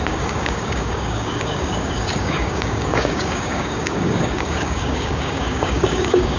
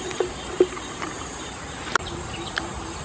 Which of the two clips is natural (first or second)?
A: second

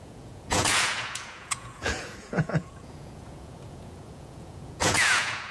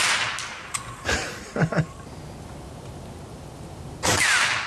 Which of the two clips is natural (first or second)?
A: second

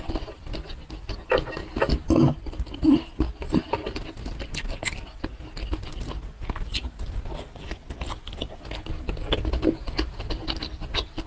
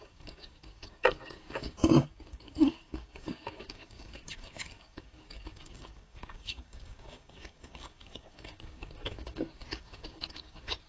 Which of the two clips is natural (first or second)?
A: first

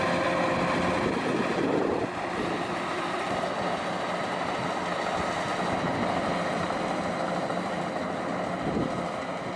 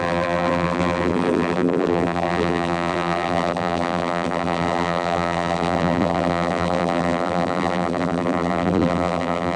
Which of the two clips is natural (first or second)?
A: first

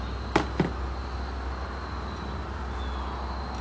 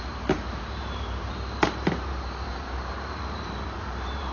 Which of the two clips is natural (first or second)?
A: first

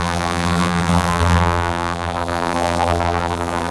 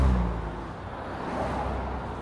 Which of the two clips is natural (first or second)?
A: second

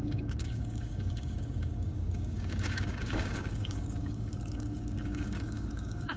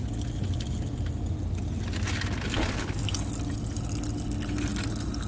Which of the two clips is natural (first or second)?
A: second